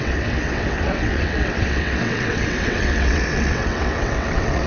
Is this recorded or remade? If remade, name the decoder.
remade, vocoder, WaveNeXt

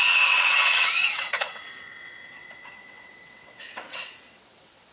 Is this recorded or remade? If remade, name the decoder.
remade, vocoder, WaveNeXt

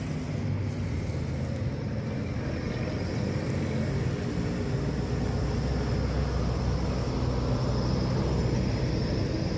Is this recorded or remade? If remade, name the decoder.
recorded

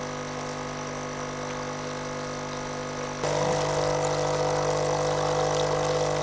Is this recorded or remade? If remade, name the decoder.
recorded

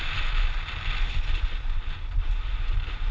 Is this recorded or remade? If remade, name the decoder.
recorded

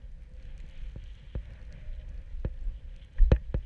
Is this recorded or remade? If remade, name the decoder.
recorded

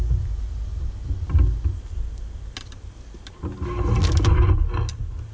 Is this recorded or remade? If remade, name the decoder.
recorded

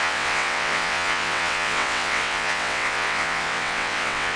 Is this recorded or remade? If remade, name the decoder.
remade, vocoder, WaveNeXt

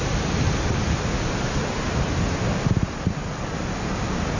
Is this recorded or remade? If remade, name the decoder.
recorded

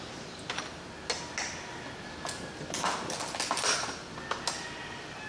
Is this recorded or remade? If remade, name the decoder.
recorded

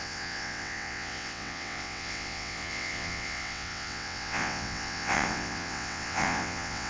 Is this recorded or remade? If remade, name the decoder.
remade, vocoder, WaveNeXt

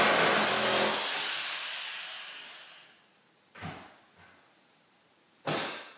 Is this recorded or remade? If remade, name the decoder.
recorded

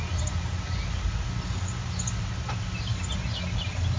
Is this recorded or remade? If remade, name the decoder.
recorded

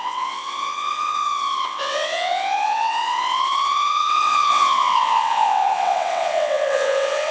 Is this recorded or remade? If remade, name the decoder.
remade, vocoder, WaveNeXt